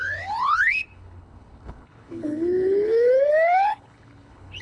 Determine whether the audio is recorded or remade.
remade